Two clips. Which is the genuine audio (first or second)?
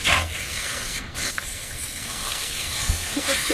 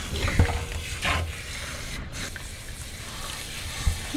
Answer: second